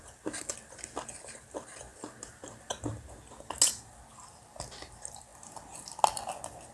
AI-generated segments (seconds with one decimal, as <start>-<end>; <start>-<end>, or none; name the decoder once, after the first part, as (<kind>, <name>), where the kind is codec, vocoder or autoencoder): none